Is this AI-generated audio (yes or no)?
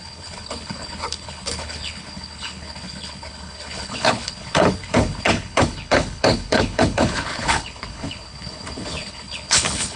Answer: yes